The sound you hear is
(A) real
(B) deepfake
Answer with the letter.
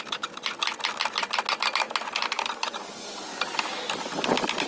A